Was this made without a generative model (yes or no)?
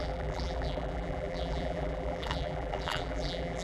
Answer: no